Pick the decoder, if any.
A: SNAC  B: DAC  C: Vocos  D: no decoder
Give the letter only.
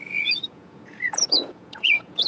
C